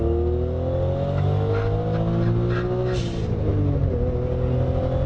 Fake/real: real